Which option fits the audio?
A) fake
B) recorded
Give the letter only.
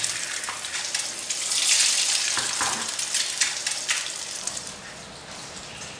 B